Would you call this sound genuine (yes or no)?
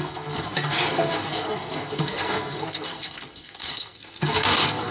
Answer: no